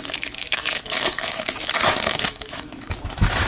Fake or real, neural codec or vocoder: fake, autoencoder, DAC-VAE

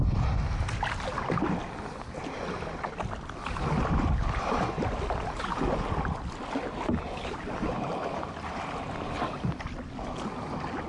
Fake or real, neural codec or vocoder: real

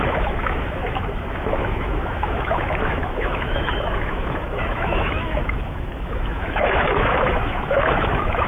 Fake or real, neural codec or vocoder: fake, autoencoder, DAC-VAE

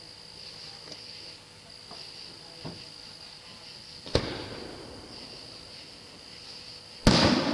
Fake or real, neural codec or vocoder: real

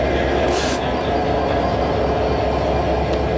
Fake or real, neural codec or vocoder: real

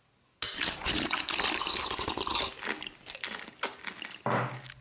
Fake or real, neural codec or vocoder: real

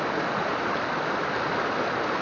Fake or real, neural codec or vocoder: real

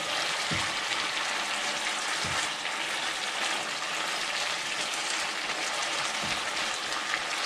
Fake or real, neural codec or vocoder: real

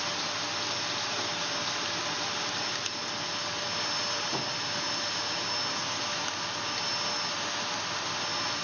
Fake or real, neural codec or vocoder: real